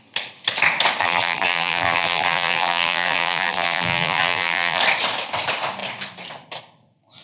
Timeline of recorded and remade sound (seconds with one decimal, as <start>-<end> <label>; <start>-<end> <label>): 0.0-1.0 recorded; 1.0-4.8 remade; 4.8-7.2 recorded